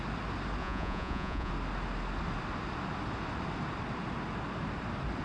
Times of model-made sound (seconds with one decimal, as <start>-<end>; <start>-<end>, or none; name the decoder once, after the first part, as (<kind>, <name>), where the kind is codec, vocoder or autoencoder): 0.6-1.5 (vocoder, Vocos)